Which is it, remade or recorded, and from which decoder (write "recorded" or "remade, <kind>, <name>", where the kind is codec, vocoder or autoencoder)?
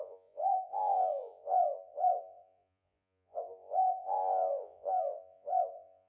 remade, vocoder, Vocos